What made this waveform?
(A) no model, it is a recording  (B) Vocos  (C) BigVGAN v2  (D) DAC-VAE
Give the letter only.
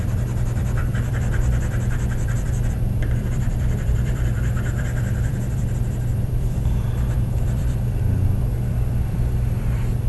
C